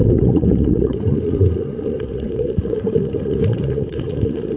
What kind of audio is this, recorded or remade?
remade